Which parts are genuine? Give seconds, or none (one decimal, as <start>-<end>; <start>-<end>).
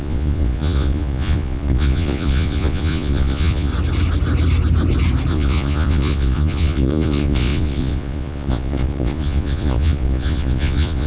3.7-5.3